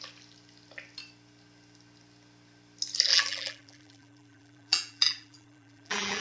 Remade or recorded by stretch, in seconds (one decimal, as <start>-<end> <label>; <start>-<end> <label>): 0.0-3.1 recorded; 3.1-6.2 remade